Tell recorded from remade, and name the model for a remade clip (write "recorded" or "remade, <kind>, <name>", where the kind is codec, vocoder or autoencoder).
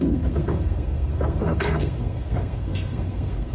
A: remade, codec, SNAC